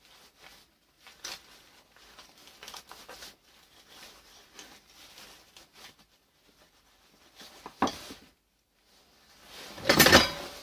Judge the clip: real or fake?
real